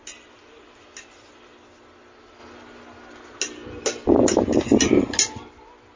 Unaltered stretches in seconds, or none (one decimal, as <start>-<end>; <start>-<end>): 0.0-6.0